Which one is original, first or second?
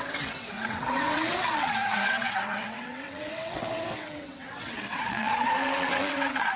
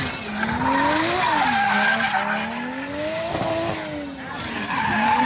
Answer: second